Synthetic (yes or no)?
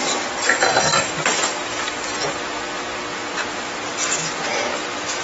no